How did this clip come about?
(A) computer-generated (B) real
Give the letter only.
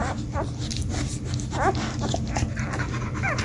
B